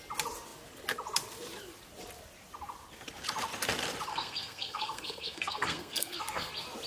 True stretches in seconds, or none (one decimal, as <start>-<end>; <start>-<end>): 0.0-4.1; 6.5-6.9